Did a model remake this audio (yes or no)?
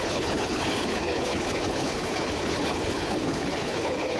yes